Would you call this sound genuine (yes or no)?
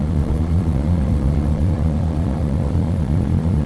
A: no